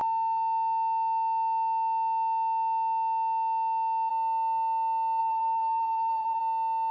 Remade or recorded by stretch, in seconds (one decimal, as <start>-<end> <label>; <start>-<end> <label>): 0.0-5.2 recorded; 5.2-6.4 remade; 6.4-6.9 recorded